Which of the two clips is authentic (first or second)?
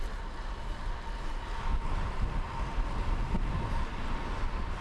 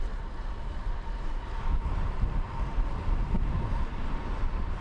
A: first